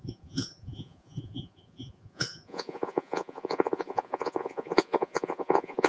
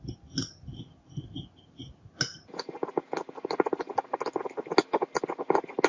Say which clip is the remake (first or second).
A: first